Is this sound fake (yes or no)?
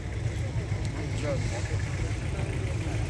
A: no